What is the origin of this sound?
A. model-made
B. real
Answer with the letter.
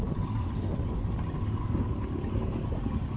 B